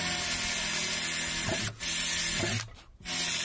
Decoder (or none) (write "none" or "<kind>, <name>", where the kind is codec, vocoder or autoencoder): none